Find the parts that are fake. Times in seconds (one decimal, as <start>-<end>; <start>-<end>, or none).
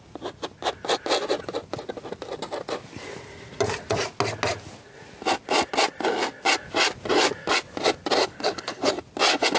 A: 8.2-8.9